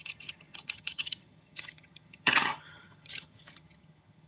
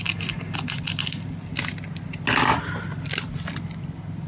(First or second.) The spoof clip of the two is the first